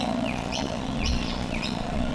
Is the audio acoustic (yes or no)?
no